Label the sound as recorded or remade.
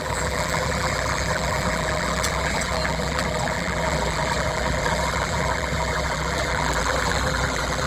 remade